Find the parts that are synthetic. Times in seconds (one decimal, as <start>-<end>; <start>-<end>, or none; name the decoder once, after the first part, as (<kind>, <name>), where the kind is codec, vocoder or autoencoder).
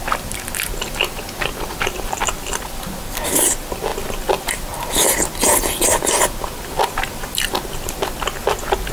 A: none